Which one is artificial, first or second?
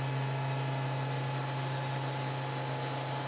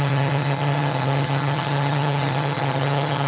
second